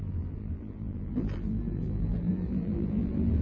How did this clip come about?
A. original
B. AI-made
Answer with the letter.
B